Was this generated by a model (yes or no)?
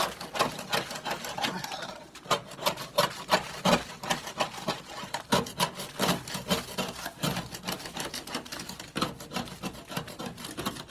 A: no